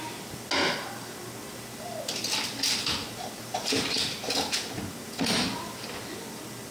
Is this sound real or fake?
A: real